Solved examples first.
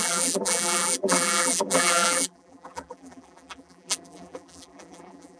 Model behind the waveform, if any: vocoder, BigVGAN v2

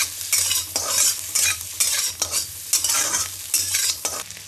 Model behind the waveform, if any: none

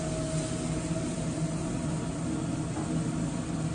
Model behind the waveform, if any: none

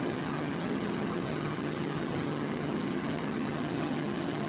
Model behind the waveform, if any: vocoder, HiFi-GAN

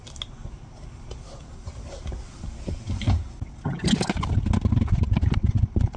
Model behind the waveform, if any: none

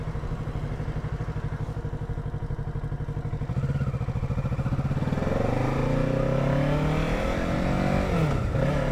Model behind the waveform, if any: none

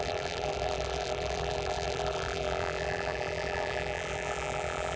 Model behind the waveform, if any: vocoder, BigVGAN v2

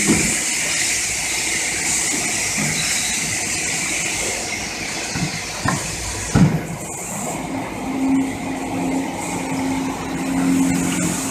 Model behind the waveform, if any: none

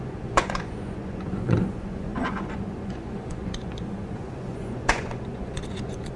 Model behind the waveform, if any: vocoder, Vocos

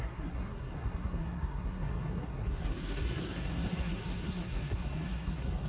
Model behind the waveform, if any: codec, SNAC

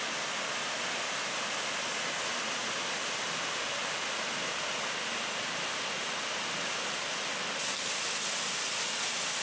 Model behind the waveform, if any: none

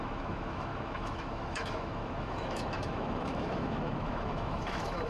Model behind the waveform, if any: autoencoder, DAC-VAE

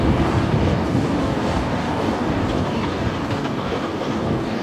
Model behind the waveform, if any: codec, DAC